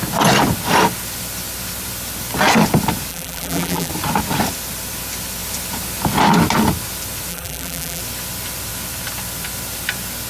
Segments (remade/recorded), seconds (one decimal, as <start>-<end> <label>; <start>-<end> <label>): 0.0-3.1 recorded; 3.1-3.9 remade; 3.9-7.3 recorded; 7.3-8.0 remade; 8.0-10.3 recorded